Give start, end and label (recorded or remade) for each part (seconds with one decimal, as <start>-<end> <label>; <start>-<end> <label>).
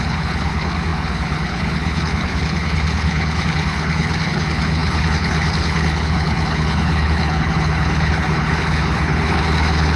0.0-10.0 remade